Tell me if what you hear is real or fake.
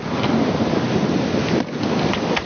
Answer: real